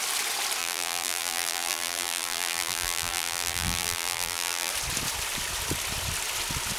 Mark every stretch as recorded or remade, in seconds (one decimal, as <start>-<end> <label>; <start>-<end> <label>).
0.0-0.6 recorded; 0.6-4.7 remade; 4.7-6.8 recorded

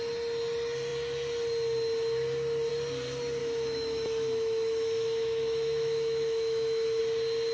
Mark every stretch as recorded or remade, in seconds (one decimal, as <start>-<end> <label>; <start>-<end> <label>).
0.0-3.4 recorded; 3.4-7.0 remade; 7.0-7.5 recorded

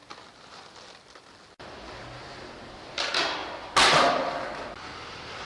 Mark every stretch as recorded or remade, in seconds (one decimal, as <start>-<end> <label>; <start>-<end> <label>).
0.0-5.5 recorded

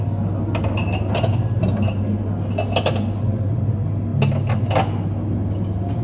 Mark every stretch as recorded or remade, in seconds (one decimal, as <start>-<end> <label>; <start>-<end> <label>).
0.0-6.0 recorded

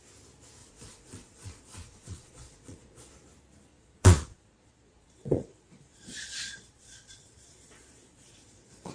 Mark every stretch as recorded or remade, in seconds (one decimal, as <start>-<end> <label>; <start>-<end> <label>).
0.0-0.6 recorded; 0.6-3.1 remade; 3.1-3.7 recorded; 3.7-8.9 remade